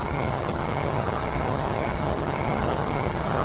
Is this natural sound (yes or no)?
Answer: no